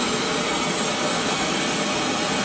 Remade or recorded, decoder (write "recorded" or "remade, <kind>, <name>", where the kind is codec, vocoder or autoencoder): recorded